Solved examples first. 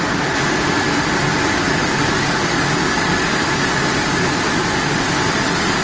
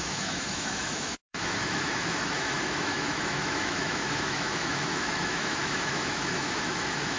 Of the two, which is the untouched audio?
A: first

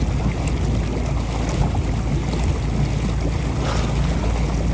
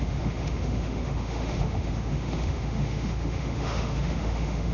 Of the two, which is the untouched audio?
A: first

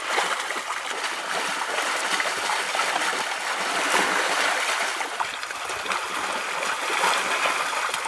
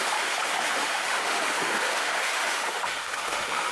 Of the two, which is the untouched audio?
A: first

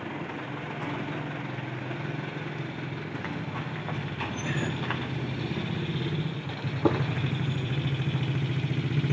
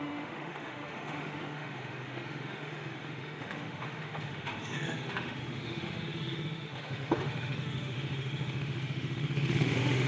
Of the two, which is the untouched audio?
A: first